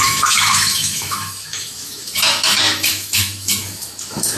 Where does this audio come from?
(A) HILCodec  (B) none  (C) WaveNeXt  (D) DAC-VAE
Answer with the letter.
D